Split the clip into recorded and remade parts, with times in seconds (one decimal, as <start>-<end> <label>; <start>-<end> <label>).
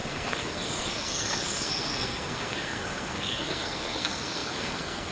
0.0-5.1 remade